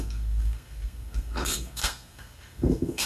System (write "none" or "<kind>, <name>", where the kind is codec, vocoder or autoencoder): codec, SNAC